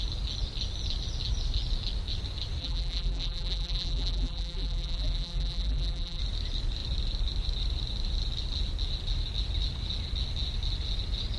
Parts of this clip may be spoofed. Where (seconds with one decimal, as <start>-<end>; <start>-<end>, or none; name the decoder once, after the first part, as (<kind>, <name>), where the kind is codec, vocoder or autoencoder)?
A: 2.6-6.2 (vocoder, BigVGAN v2)